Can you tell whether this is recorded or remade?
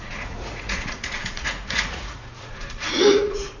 remade